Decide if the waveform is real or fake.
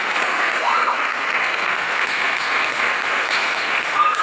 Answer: fake